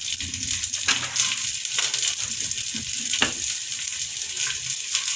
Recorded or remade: recorded